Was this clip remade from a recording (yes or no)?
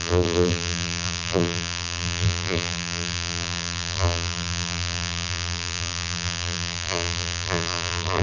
yes